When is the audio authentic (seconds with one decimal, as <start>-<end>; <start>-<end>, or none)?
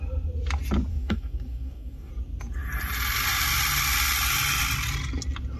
0.0-0.9; 2.1-5.6